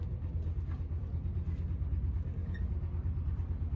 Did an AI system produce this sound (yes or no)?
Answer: no